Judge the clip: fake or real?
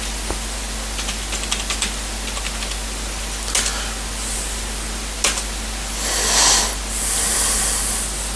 real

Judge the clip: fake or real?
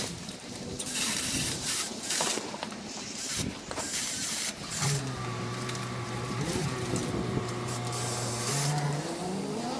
fake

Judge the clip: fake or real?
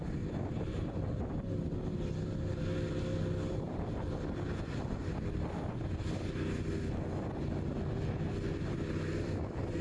real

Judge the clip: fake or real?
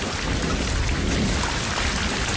real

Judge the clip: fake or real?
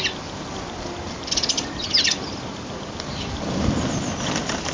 real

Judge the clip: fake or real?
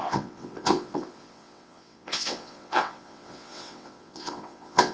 fake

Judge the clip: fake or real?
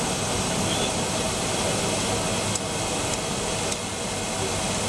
real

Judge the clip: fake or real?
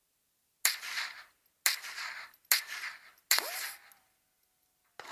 real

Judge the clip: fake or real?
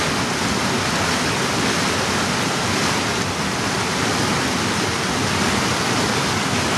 real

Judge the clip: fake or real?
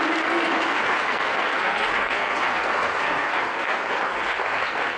fake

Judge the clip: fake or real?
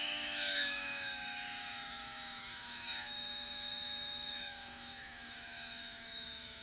fake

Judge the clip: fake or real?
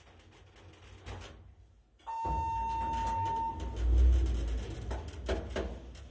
real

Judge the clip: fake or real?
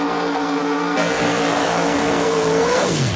fake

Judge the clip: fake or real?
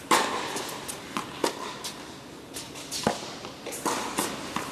real